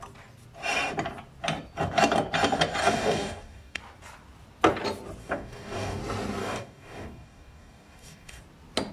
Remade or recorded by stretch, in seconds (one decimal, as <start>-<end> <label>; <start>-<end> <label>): 0.0-2.8 recorded; 2.8-3.8 remade; 3.8-5.2 recorded; 5.2-6.0 remade; 6.0-6.4 recorded; 6.4-8.4 remade; 8.4-8.9 recorded